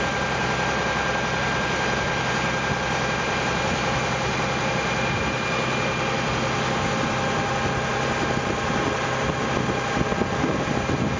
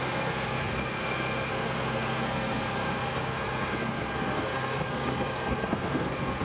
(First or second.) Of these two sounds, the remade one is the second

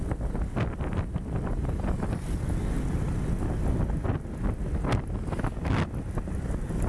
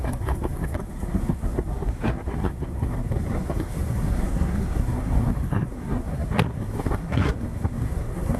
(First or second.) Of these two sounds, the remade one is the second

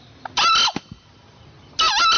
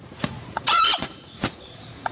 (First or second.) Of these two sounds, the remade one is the second